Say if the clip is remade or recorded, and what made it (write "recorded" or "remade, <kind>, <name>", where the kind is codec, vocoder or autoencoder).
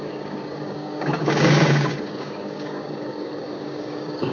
remade, codec, DAC